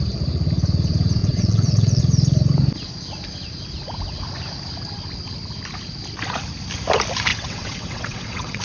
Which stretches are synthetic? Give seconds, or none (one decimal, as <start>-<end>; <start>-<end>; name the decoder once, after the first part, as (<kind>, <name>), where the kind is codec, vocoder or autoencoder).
1.2-2.0 (vocoder, WaveNeXt); 7.3-8.6